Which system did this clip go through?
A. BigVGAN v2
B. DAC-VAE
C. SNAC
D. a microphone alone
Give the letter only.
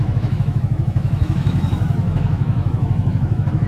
B